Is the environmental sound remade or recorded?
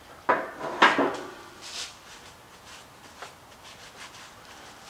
recorded